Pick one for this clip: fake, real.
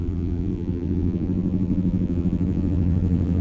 fake